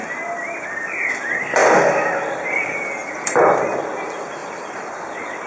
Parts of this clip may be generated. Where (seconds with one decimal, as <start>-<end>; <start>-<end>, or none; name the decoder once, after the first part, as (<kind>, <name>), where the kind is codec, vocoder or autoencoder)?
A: 1.6-2.5 (vocoder, BigVGAN v2); 3.0-3.6; 4.4-5.0